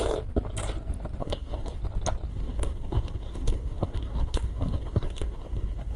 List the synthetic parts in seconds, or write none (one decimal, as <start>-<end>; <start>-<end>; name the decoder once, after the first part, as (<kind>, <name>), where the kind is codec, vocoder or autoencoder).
1.2-1.8 (codec, SNAC); 2.3-6.0